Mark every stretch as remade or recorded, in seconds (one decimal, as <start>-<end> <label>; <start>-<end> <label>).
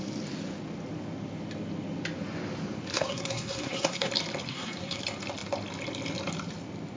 0.0-2.9 recorded; 2.9-4.1 remade; 4.1-4.5 recorded; 4.5-5.0 remade; 5.0-7.0 recorded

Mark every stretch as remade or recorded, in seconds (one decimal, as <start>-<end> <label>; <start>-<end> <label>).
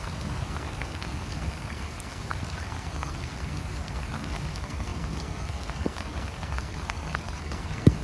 0.0-8.0 remade